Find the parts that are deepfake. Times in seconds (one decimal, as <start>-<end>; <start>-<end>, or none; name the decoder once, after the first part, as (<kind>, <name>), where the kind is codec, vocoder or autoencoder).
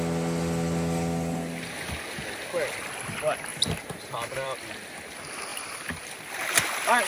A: 3.5-4.7 (vocoder, BigVGAN v2); 5.5-6.5